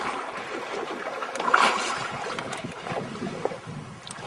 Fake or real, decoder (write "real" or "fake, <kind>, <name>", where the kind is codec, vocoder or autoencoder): fake, vocoder, BigVGAN v2